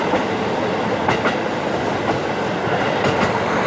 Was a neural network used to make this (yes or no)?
no